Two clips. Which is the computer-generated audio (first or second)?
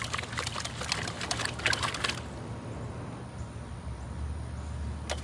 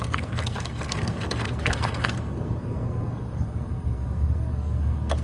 second